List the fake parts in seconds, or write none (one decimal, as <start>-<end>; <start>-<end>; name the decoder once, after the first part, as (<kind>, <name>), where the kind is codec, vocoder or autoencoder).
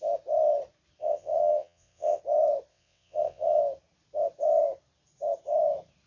1.0-2.2 (vocoder, WaveNeXt); 2.7-3.6